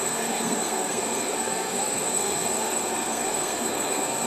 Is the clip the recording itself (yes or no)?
no